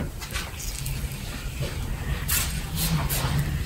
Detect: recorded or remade recorded